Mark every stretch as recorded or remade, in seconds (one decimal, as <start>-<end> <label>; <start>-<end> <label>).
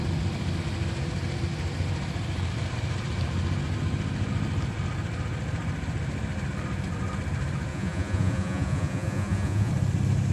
0.0-7.7 recorded; 7.7-9.7 remade; 9.7-10.3 recorded